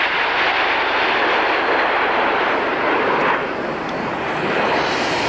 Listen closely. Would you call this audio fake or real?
real